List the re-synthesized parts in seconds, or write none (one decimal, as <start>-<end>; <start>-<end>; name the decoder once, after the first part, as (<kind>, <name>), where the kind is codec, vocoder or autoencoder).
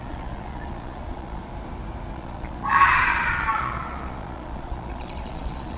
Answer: 0.0-1.4 (vocoder, Vocos); 2.1-5.8